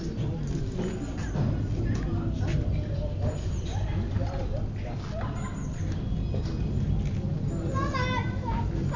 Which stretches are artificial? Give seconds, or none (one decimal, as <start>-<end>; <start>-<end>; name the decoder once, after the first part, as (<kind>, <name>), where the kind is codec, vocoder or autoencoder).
none

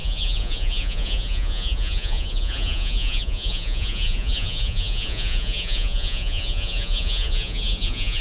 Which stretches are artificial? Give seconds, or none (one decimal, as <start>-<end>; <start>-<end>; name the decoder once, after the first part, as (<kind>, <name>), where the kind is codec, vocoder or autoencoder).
0.0-8.2 (vocoder, Vocos)

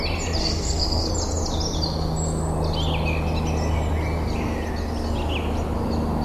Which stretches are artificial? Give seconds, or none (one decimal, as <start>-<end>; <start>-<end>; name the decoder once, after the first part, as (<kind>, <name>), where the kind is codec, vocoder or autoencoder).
0.4-1.1 (codec, SNAC)

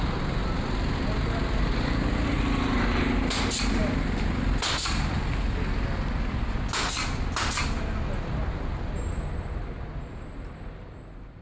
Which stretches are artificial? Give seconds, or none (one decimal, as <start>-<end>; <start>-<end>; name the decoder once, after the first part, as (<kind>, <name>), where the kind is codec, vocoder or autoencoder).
none

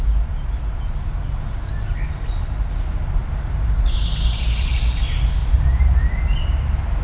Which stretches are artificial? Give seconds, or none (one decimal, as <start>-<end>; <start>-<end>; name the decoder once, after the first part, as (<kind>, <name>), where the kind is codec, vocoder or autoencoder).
3.2-4.8 (vocoder, BigVGAN v2); 5.4-6.2

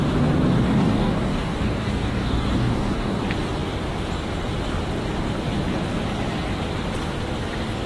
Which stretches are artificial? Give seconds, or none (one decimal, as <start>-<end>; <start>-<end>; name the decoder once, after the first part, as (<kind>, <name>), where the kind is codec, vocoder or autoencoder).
0.7-3.2 (codec, DAC)

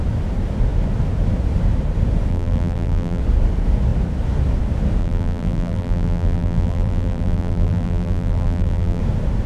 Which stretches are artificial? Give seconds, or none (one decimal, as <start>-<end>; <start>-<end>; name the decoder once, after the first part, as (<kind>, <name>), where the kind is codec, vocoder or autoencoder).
2.3-3.2 (vocoder, BigVGAN v2); 5.0-9.0